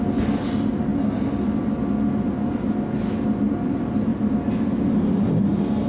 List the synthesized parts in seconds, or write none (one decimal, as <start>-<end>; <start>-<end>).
none